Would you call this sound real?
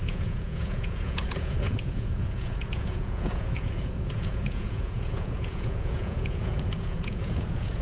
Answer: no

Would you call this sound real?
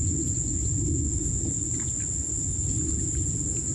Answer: yes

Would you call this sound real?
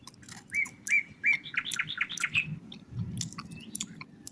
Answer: yes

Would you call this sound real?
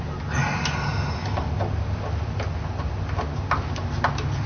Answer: yes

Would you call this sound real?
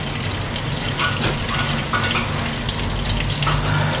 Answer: yes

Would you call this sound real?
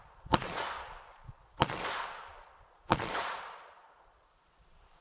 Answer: no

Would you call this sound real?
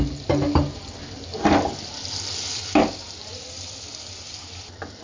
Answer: yes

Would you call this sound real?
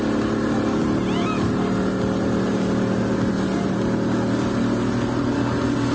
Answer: yes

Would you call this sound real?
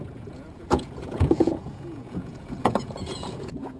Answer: no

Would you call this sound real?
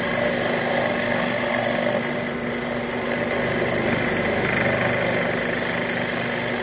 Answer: yes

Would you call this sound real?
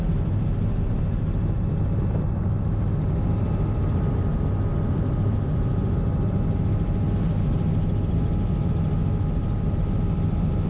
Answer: yes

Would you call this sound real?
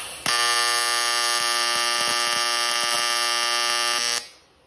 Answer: yes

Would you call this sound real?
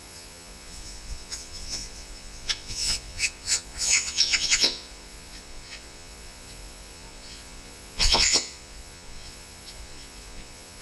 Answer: no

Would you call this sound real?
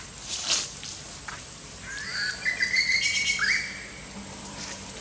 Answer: yes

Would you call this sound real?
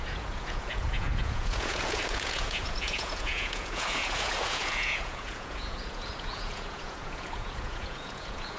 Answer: no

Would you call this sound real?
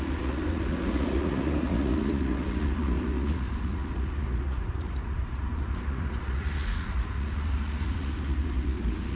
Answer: no